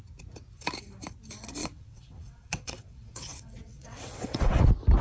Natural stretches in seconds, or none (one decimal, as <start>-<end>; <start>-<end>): 0.0-1.6; 4.6-5.0